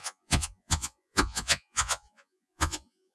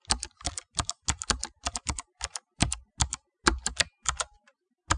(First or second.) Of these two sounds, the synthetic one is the first